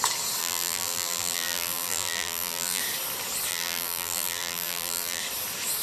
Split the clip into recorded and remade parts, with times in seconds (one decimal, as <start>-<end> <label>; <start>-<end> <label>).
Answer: 0.0-0.4 recorded; 0.4-2.8 remade; 2.8-3.5 recorded; 3.5-5.2 remade; 5.2-5.8 recorded